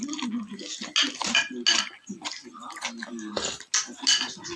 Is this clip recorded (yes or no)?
yes